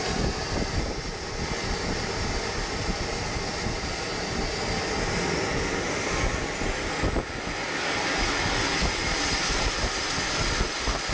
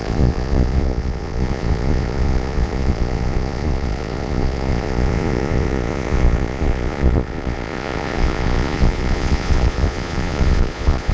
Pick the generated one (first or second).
second